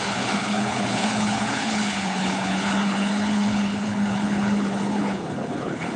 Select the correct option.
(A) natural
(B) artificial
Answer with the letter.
B